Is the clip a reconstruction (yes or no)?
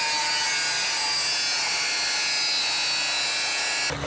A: no